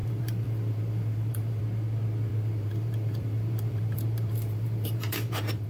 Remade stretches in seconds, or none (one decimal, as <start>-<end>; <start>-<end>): 0.0-1.6; 2.3-5.7